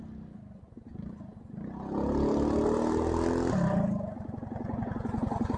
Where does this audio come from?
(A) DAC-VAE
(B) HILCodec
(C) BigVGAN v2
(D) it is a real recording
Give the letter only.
D